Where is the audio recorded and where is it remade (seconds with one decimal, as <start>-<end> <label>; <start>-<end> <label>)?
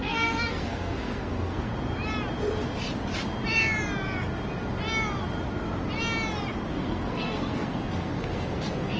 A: 0.0-1.7 remade; 1.7-6.7 recorded; 6.7-9.0 remade